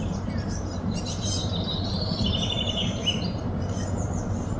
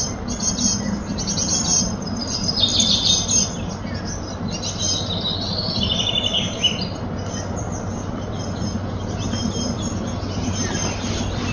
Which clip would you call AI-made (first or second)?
first